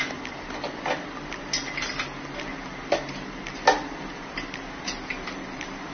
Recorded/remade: recorded